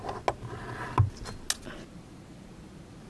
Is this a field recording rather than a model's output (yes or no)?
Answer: yes